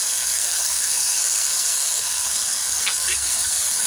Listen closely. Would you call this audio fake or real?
fake